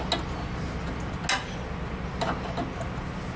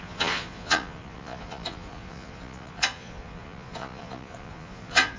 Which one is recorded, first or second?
first